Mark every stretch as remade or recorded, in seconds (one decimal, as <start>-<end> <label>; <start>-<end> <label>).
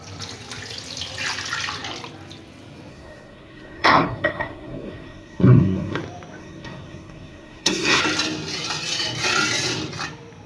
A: 0.0-2.9 recorded; 2.9-6.0 remade; 6.0-6.4 recorded; 6.4-8.0 remade; 8.0-10.5 recorded